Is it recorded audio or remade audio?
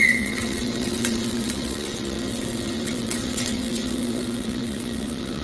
remade